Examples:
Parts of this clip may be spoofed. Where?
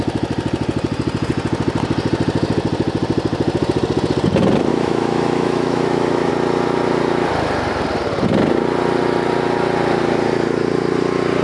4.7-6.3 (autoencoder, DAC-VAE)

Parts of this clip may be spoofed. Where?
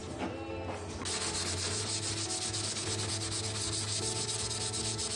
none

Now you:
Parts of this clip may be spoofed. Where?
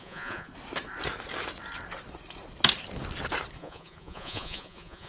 0.0-0.5 (vocoder, Vocos); 3.6-5.1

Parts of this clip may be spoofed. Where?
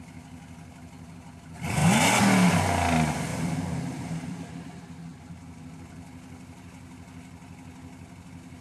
3.3-4.5 (vocoder, BigVGAN v2); 5.1-5.7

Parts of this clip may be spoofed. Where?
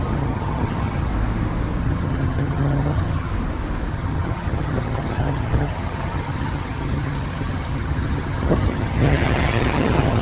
0.0-1.1 (vocoder, HiFi-GAN); 1.8-3.3; 3.9-10.2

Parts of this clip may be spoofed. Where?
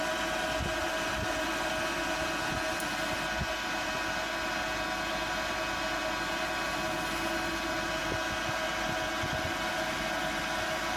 0.8-1.7 (vocoder, BigVGAN v2)